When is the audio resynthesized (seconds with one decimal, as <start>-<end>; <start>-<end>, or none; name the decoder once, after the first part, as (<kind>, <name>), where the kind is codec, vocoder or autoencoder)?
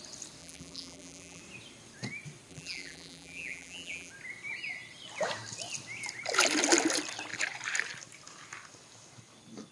0.4-1.4 (vocoder, BigVGAN v2); 2.5-4.1